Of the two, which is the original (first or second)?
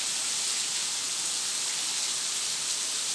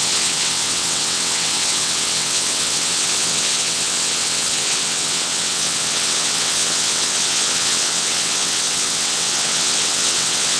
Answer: first